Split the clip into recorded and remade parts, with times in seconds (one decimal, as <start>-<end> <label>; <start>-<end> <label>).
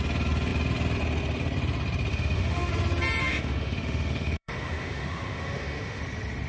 0.0-2.1 recorded; 2.1-2.7 remade; 2.7-3.2 recorded; 3.2-6.0 remade; 6.0-6.5 recorded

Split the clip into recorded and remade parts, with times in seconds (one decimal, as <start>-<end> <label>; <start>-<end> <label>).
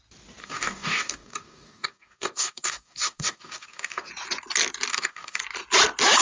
0.0-0.4 recorded; 0.4-4.1 remade; 4.1-4.9 recorded; 4.9-5.4 remade; 5.4-6.2 recorded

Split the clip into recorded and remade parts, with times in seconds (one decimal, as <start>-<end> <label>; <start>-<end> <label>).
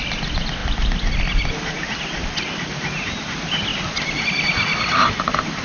0.0-5.6 recorded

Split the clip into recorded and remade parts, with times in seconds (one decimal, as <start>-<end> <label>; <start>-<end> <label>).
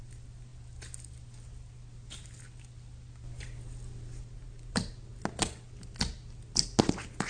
0.0-7.3 recorded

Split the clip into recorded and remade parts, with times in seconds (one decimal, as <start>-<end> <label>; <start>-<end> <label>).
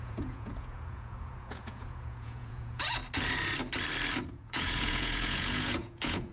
0.0-3.0 remade; 3.0-4.3 recorded; 4.3-6.3 remade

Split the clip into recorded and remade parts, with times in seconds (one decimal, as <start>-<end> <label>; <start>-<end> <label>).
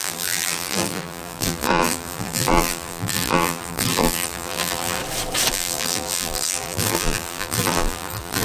0.0-5.0 remade; 5.0-5.5 recorded; 5.5-8.4 remade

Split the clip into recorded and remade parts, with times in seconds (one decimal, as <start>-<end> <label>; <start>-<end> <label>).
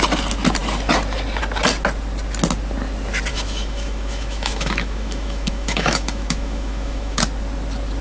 0.0-3.3 recorded; 3.3-7.2 remade; 7.2-8.0 recorded